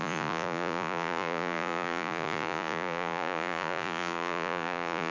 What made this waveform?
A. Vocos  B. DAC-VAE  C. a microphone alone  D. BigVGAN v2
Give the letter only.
A